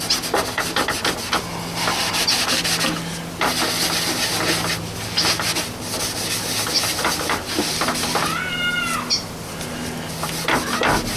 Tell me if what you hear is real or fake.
real